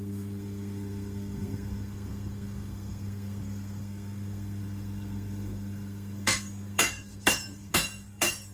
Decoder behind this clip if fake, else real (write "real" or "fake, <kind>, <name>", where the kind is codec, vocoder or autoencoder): fake, codec, SNAC